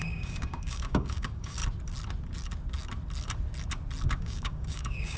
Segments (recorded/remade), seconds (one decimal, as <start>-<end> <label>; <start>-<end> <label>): 0.0-1.6 remade; 1.6-4.2 recorded; 4.2-5.2 remade